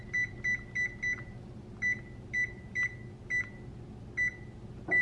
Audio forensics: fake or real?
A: real